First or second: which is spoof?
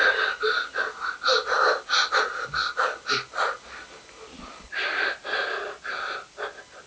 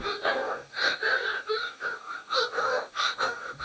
second